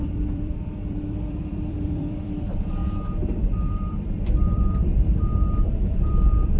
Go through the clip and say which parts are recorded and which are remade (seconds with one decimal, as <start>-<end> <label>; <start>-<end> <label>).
0.0-2.8 remade; 2.8-3.4 recorded; 3.4-6.6 remade